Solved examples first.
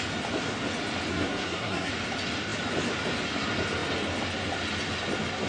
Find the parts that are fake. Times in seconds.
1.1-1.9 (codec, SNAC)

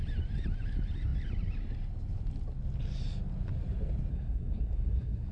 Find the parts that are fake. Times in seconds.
4.1-5.3 (codec, SNAC)

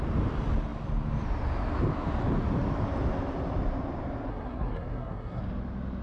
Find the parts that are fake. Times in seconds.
4.3-5.4 (codec, SNAC)

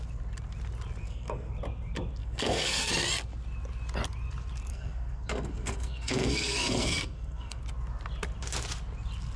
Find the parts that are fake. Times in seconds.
1.0-1.5 (codec, SNAC); 2.2-2.9; 4.7-7.6

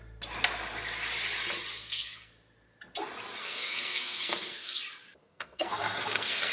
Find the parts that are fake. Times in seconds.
1.8-2.3 (codec, SNAC); 3.4-4.8; 5.2-6.5

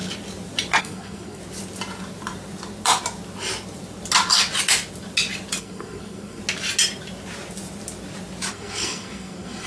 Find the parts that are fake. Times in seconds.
0.8-1.4 (codec, SNAC); 5.6-6.4; 8.5-9.7